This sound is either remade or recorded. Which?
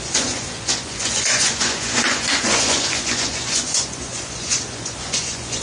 remade